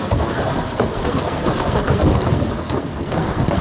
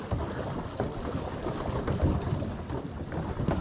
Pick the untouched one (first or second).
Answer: second